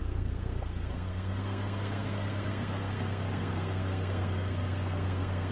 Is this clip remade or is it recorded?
remade